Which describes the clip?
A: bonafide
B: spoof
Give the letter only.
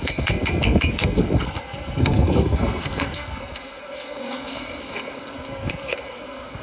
B